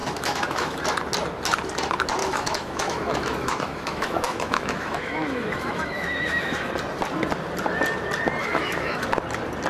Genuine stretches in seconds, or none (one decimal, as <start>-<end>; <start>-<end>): 0.8-2.2; 6.7-8.4; 9.1-9.7